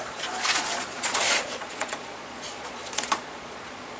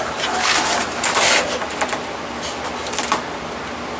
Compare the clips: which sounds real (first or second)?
second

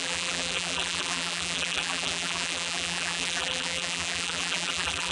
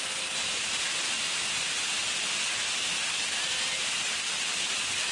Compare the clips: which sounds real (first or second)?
second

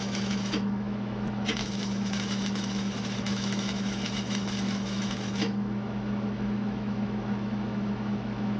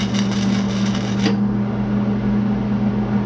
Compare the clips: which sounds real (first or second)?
second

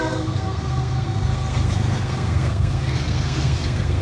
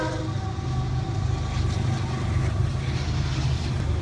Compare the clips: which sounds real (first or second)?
second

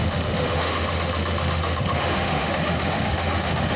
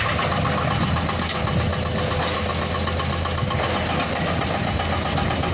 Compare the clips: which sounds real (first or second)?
second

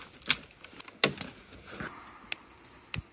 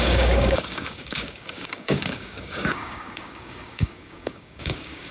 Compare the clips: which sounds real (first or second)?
first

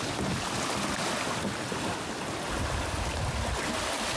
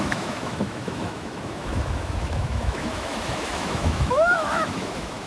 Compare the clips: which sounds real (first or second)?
first